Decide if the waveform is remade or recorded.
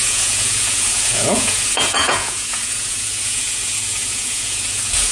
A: remade